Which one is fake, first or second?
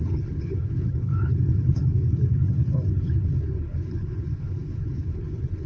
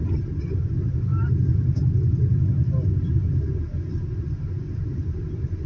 first